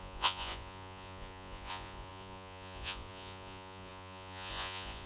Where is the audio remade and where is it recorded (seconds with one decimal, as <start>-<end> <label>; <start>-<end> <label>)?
0.0-5.1 remade